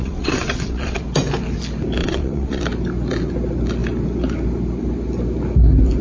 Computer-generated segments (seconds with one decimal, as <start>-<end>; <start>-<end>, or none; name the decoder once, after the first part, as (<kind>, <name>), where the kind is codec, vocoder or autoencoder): 0.0-1.0 (vocoder, WaveNeXt); 2.0-2.6